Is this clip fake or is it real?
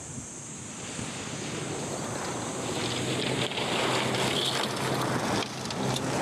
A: real